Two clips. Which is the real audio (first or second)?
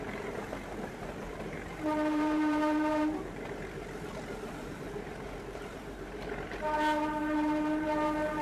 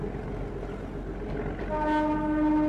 second